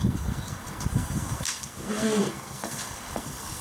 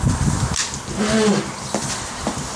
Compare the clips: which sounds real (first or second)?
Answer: second